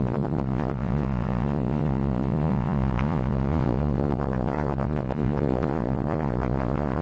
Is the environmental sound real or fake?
fake